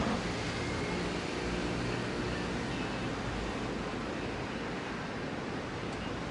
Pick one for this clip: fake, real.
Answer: real